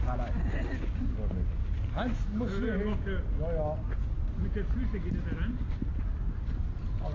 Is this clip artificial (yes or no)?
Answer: no